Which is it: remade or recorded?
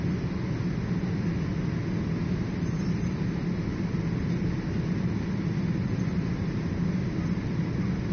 recorded